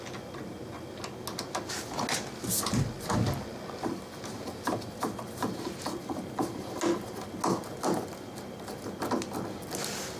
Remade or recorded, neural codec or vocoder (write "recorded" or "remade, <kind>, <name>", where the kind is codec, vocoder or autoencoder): recorded